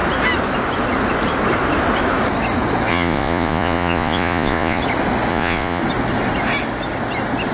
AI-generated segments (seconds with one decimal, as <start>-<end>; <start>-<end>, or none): 2.9-4.8; 5.3-5.8